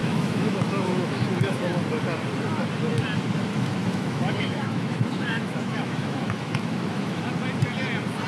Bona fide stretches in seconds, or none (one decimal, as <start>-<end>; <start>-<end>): 1.8-3.5; 7.2-8.3